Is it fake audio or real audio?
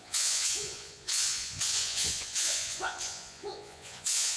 fake